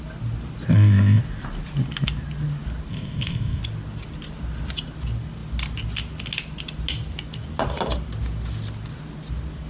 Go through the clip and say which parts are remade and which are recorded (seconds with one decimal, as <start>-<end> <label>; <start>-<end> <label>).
0.0-0.7 recorded; 0.7-1.2 remade; 1.2-2.9 recorded; 2.9-3.6 remade; 3.6-9.7 recorded